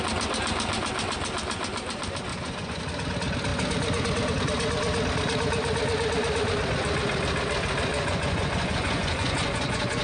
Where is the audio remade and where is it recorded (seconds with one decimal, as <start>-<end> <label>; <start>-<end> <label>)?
0.0-2.3 recorded; 2.3-2.8 remade; 2.8-7.9 recorded; 7.9-10.0 remade